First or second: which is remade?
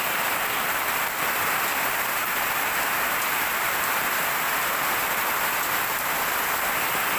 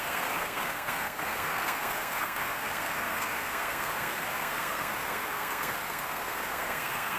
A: second